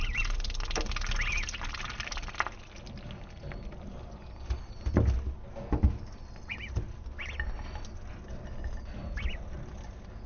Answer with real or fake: real